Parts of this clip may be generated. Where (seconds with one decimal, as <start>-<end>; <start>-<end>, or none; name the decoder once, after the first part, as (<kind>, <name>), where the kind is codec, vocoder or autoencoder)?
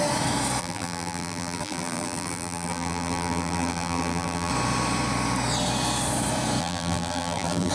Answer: 0.6-4.5 (vocoder, BigVGAN v2); 6.6-7.7